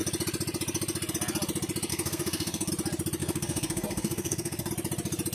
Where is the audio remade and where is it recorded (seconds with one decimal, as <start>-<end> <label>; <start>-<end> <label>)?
0.0-1.9 recorded; 1.9-2.7 remade; 2.7-3.2 recorded; 3.2-4.7 remade; 4.7-5.3 recorded